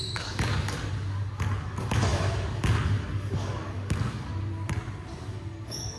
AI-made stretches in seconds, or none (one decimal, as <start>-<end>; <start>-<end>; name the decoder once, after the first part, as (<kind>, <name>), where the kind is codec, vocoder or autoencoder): 0.0-4.3 (codec, DAC); 5.2-6.0